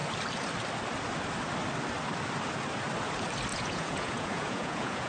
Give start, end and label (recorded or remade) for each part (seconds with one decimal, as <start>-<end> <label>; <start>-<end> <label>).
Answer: 0.0-3.5 recorded; 3.5-5.1 remade